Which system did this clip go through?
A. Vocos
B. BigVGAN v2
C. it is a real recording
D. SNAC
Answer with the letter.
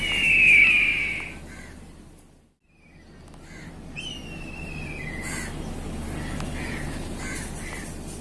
C